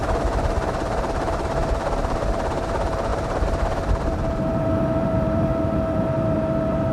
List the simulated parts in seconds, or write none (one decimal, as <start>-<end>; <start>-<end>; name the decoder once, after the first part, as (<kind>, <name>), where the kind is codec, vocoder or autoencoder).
0.0-6.9 (vocoder, BigVGAN v2)